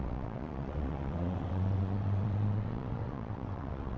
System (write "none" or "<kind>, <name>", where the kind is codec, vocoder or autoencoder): vocoder, WaveNeXt